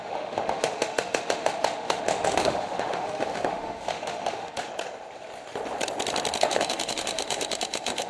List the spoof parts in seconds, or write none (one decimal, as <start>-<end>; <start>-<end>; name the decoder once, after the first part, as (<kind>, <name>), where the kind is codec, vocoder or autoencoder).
0.0-4.7 (autoencoder, DAC-VAE); 6.4-8.1